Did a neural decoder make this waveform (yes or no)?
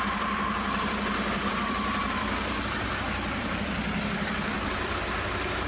yes